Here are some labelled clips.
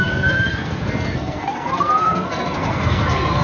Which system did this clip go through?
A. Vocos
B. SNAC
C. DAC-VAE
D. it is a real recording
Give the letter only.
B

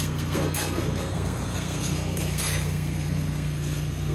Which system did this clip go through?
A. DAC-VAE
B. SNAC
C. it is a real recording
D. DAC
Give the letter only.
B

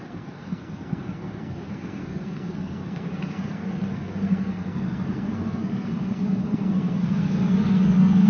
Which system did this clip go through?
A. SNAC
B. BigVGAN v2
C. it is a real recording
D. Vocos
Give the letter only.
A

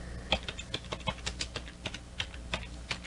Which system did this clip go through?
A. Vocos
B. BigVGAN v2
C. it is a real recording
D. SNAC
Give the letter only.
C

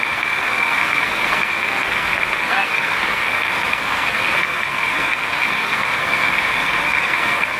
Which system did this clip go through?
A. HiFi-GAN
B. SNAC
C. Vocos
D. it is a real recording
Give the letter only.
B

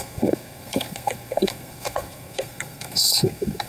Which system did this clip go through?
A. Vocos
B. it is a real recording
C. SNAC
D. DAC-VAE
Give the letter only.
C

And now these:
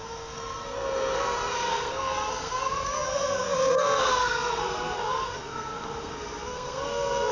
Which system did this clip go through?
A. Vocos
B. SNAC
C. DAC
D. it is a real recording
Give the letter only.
B